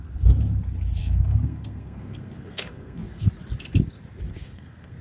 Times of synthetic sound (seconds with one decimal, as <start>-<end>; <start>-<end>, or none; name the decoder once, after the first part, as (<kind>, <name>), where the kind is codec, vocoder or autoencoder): 1.0-3.3 (codec, SNAC); 4.3-5.0